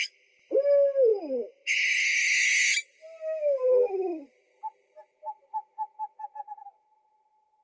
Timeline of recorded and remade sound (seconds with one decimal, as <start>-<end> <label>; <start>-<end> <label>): 0.0-7.6 recorded